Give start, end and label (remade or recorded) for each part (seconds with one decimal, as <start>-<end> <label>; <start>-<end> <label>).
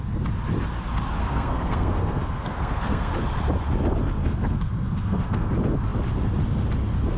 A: 0.0-1.2 recorded; 1.2-3.1 remade; 3.1-4.2 recorded; 4.2-5.5 remade; 5.5-7.2 recorded